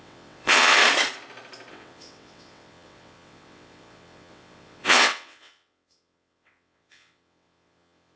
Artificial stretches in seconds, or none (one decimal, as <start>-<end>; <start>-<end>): 0.0-0.8; 1.7-8.2